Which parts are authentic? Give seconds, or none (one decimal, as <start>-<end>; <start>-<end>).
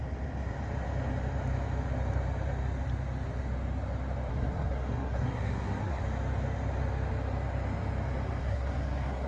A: 0.0-4.3; 6.0-8.4